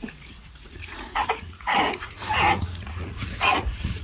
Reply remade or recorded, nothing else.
remade